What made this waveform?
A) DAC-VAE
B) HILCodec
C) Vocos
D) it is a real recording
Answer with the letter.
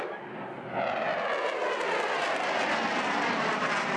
D